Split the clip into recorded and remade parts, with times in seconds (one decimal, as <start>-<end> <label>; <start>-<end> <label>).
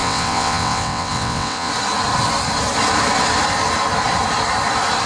0.0-1.7 remade; 1.7-5.1 recorded